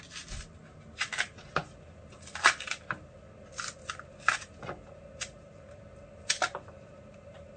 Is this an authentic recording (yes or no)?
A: yes